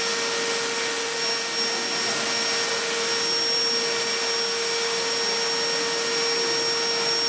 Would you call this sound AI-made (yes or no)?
no